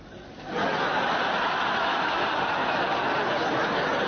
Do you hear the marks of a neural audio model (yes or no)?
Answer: no